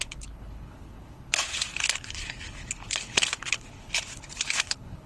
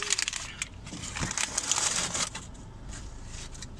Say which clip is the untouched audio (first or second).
second